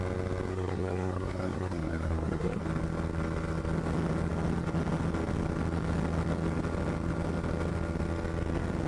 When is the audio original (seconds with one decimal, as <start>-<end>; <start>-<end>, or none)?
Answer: 0.0-0.5; 2.6-8.9